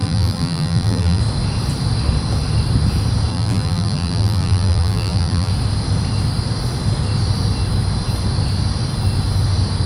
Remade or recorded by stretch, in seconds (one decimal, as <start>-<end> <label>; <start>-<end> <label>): 0.0-1.2 remade; 1.2-3.3 recorded; 3.3-5.5 remade; 5.5-9.9 recorded